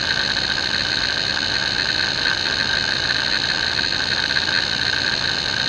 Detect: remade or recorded recorded